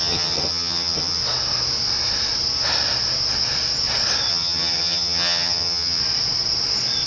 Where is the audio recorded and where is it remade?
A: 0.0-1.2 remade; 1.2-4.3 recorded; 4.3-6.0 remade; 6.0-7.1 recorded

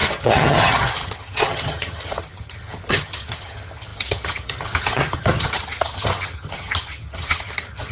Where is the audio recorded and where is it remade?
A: 0.0-7.9 remade

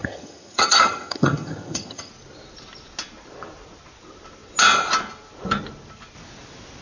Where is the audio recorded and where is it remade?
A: 0.0-2.1 remade; 2.1-6.8 recorded

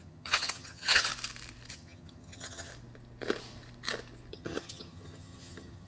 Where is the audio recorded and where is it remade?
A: 0.0-1.1 remade; 1.1-1.7 recorded; 1.7-2.7 remade; 2.7-4.3 recorded; 4.3-5.9 remade

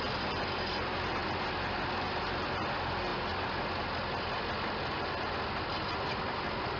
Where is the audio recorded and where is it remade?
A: 0.0-6.8 recorded

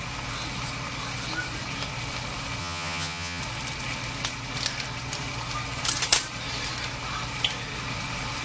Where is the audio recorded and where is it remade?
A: 0.0-2.6 recorded; 2.6-3.4 remade; 3.4-8.4 recorded

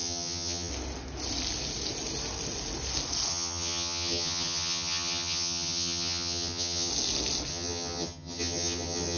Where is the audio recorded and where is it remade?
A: 0.0-0.7 remade; 0.7-3.3 recorded; 3.3-6.9 remade; 6.9-7.5 recorded; 7.5-9.2 remade

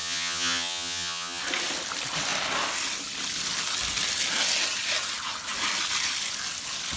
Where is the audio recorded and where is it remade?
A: 0.0-1.4 remade; 1.4-7.0 recorded